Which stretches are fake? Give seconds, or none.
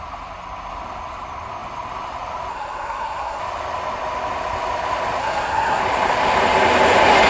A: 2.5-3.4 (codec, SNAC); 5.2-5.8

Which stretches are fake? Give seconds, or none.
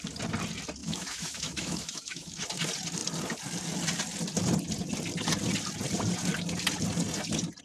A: 0.8-2.4 (autoencoder, DAC-VAE)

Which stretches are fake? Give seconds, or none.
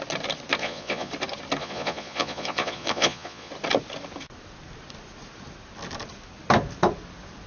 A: 0.6-1.1 (vocoder, Vocos); 1.6-3.5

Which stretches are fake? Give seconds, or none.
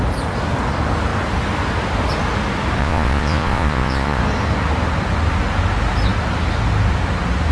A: 2.8-4.2 (vocoder, Vocos)